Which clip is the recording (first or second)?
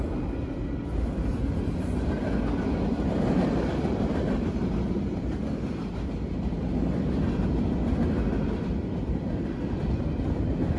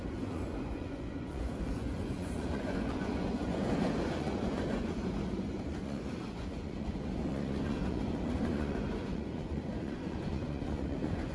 first